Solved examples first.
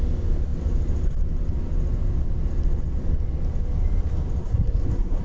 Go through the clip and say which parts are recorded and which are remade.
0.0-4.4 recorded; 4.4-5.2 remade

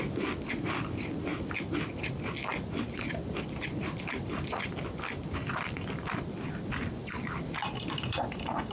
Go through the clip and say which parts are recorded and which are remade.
0.0-1.3 remade; 1.3-2.7 recorded; 2.7-8.7 remade

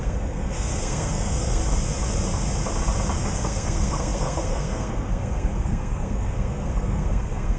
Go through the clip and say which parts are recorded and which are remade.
0.0-1.6 remade; 1.6-3.2 recorded; 3.2-7.6 remade

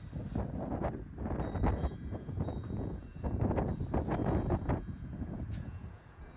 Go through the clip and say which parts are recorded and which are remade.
0.0-1.8 recorded; 1.8-3.4 remade; 3.4-4.2 recorded; 4.2-6.4 remade

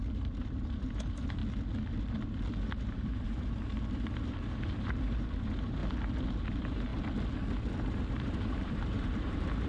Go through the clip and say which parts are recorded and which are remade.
0.0-1.4 remade; 1.4-2.8 recorded; 2.8-5.8 remade; 5.8-6.4 recorded; 6.4-6.9 remade; 6.9-8.1 recorded; 8.1-9.7 remade